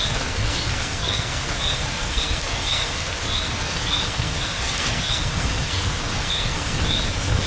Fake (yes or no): yes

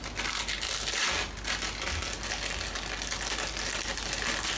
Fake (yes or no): no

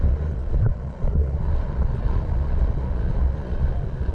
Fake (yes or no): yes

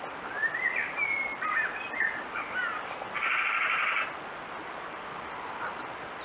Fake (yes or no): no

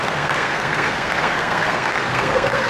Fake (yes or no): yes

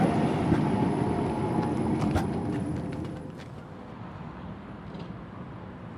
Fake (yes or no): no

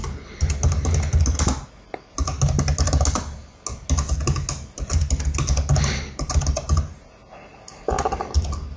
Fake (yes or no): no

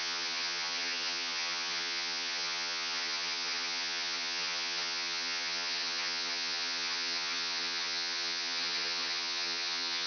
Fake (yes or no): yes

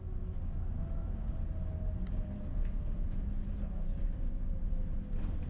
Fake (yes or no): no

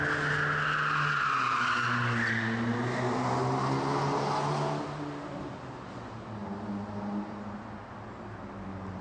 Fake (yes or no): no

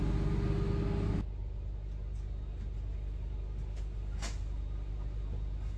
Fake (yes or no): no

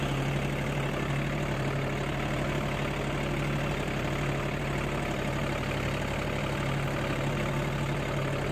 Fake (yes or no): no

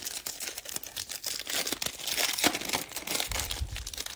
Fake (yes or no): no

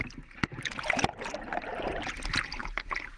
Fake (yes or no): no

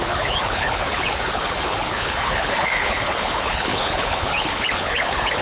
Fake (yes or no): yes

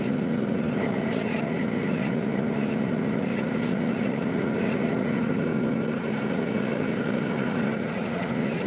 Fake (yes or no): yes